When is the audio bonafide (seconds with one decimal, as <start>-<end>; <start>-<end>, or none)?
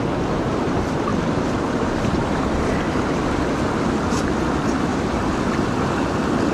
0.0-1.1; 2.7-4.9; 5.4-6.5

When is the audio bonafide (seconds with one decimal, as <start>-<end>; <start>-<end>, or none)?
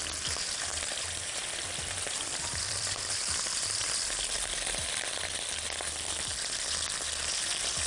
0.0-0.7; 5.4-7.9